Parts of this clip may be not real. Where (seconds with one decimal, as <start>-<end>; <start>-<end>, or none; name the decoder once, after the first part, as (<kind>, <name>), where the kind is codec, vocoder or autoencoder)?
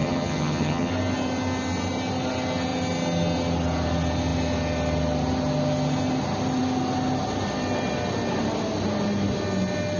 0.0-0.9 (vocoder, HiFi-GAN)